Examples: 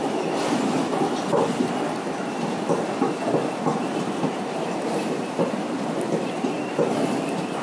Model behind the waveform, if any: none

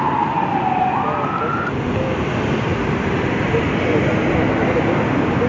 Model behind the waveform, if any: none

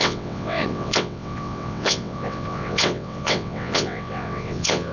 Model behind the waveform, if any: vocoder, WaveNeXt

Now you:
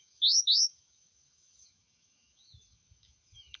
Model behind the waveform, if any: autoencoder, DAC-VAE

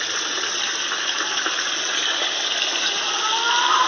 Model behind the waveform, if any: none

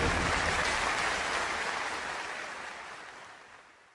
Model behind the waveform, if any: none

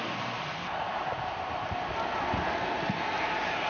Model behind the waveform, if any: vocoder, BigVGAN v2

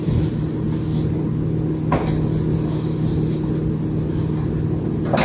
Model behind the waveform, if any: none